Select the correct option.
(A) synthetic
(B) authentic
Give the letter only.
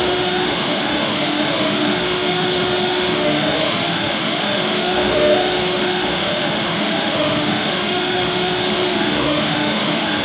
A